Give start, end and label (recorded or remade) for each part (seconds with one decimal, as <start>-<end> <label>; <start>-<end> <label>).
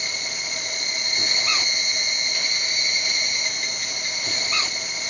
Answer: 0.0-1.2 remade; 1.2-4.3 recorded; 4.3-5.1 remade